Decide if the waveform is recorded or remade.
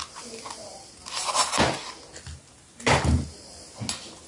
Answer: recorded